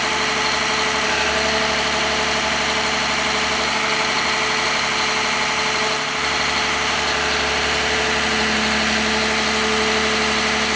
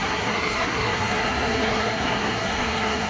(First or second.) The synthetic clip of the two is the second